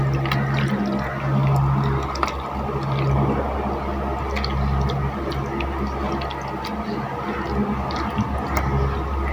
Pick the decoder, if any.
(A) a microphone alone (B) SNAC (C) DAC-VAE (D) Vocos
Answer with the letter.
A